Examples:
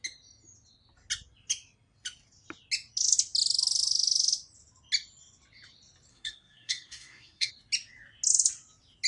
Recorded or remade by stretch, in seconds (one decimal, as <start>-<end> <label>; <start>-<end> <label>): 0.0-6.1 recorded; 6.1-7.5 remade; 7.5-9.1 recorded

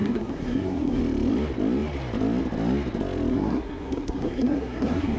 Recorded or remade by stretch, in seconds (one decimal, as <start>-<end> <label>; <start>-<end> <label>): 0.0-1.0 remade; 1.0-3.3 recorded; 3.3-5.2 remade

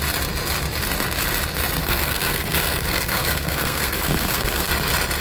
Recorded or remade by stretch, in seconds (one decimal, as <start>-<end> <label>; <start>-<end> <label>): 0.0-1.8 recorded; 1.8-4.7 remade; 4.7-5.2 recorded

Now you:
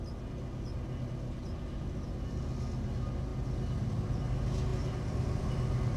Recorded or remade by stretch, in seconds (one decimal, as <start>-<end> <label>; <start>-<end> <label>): 0.0-6.0 recorded

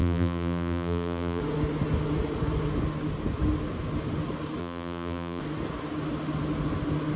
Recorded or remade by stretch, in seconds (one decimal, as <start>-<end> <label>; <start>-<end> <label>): 0.0-1.4 remade; 1.4-4.6 recorded; 4.6-5.4 remade; 5.4-7.2 recorded